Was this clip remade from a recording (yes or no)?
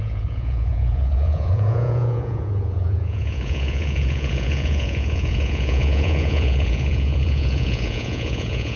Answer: yes